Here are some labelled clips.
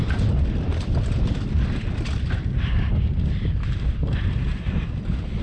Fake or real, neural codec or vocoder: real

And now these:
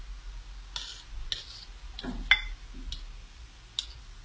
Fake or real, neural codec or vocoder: real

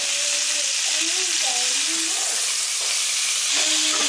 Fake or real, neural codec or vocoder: real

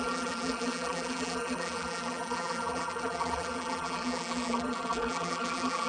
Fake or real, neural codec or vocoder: fake, vocoder, BigVGAN v2